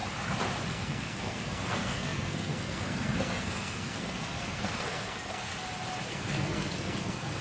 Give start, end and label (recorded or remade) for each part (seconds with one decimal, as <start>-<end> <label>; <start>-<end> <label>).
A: 0.0-0.7 recorded; 0.7-5.5 remade; 5.5-6.1 recorded; 6.1-7.4 remade

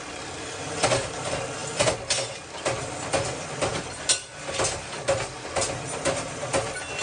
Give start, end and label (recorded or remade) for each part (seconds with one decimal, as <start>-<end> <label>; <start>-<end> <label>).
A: 0.0-7.0 recorded

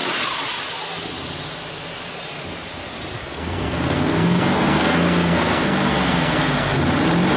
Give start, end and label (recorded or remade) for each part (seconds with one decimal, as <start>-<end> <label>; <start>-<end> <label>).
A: 0.0-3.2 recorded; 3.2-6.8 remade; 6.8-7.4 recorded

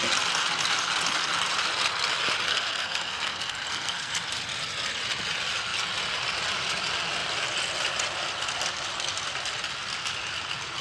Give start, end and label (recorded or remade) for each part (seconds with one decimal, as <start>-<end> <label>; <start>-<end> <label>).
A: 0.0-2.5 recorded; 2.5-4.1 remade; 4.1-10.8 recorded

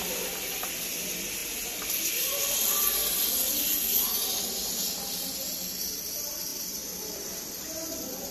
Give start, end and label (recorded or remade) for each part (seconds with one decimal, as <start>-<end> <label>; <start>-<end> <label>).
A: 0.0-8.3 recorded

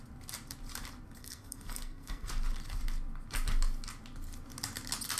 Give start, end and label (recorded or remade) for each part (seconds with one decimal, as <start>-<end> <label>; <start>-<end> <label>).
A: 0.0-1.2 recorded; 1.2-2.3 remade; 2.3-5.2 recorded

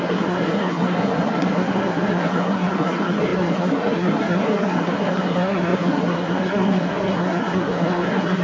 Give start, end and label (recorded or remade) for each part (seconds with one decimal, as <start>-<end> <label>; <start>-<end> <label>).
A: 0.0-8.4 remade

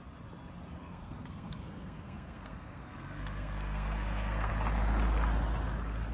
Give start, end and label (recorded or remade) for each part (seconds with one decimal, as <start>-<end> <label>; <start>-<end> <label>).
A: 0.0-0.8 recorded; 0.8-4.5 remade; 4.5-6.1 recorded